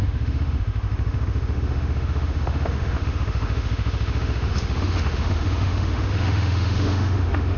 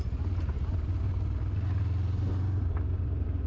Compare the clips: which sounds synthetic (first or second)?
first